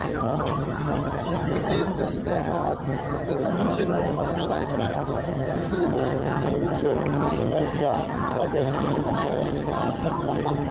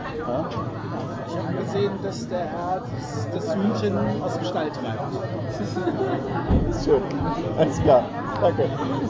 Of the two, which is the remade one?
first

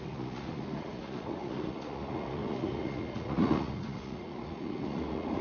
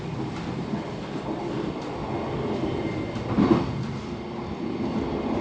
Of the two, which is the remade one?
first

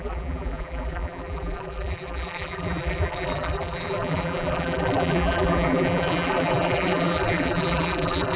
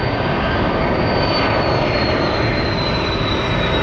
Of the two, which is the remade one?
first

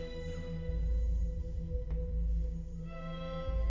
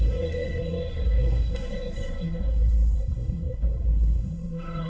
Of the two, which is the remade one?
second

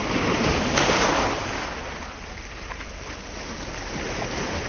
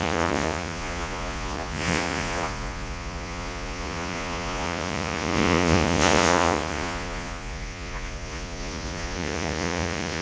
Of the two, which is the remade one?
second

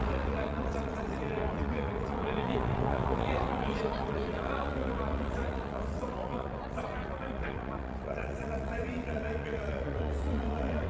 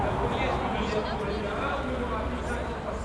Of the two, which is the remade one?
first